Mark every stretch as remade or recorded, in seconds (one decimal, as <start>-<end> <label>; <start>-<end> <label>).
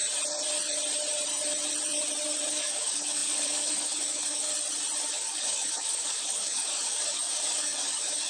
0.0-2.5 recorded; 2.5-4.5 remade; 4.5-5.1 recorded; 5.1-8.3 remade